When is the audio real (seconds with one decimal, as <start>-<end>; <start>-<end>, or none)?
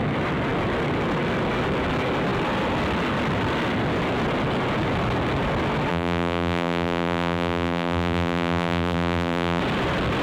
0.0-5.9; 9.6-10.2